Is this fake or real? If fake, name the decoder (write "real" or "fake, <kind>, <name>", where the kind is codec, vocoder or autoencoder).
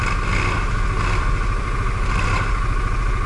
real